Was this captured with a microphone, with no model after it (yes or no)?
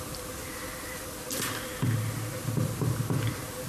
no